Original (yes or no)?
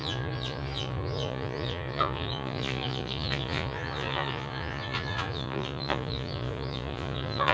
no